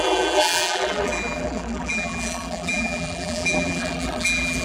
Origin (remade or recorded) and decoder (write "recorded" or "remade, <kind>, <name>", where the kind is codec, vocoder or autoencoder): remade, vocoder, BigVGAN v2